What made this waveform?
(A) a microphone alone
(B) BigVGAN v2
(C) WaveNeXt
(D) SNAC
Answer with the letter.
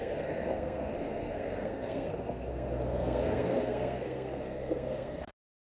D